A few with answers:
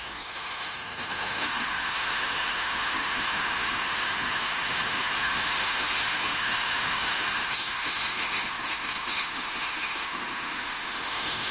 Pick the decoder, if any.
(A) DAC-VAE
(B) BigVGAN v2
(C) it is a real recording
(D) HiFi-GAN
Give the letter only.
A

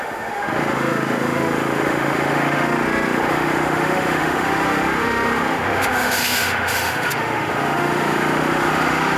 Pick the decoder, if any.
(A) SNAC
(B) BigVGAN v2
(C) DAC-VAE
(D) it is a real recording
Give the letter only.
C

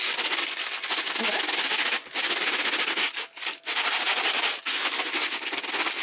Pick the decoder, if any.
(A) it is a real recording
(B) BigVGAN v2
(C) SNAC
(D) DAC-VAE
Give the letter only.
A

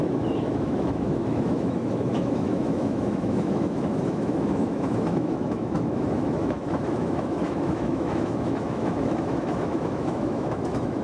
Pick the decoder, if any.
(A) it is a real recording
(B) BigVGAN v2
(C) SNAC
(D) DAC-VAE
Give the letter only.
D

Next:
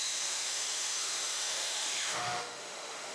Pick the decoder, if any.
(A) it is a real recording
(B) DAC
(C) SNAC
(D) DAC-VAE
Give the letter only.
D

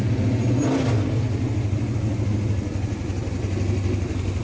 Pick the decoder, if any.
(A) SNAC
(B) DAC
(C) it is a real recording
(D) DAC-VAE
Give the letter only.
C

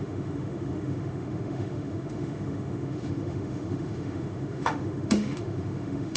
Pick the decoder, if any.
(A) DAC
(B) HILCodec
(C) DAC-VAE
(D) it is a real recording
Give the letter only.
C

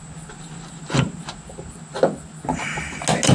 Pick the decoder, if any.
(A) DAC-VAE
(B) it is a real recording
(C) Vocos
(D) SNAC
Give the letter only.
B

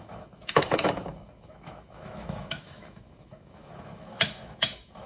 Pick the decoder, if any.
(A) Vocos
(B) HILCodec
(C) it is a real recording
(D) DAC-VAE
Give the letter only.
D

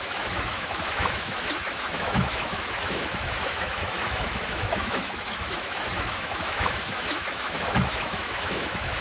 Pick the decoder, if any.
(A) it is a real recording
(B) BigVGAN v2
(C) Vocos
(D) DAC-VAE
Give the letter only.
D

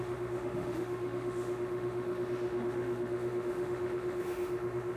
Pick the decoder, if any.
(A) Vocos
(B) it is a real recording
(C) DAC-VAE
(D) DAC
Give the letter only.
C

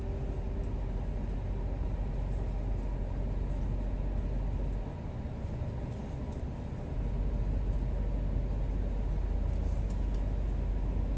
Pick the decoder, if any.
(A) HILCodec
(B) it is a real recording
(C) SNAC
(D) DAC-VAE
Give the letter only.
B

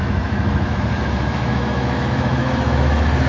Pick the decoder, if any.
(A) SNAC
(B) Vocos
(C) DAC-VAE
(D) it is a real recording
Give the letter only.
C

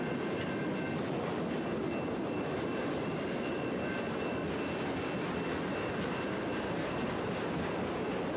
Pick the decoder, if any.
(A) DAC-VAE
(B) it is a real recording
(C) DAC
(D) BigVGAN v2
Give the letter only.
B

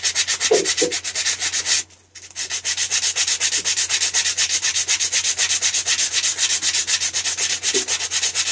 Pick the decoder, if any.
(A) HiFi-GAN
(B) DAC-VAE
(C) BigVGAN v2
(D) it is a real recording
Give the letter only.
D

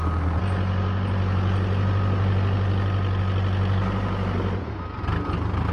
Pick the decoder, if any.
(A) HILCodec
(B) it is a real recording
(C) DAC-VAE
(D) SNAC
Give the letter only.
B